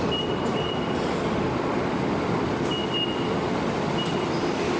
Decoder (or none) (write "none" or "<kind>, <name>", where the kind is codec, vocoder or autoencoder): none